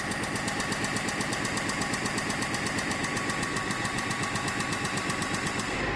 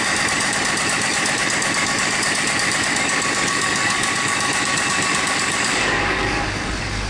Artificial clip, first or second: second